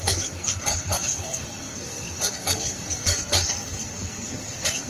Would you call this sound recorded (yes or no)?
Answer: no